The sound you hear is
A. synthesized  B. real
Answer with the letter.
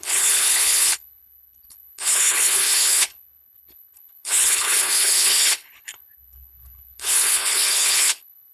A